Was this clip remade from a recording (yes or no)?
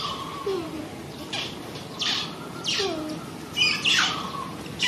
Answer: no